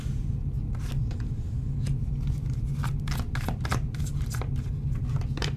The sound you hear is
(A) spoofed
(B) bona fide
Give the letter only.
B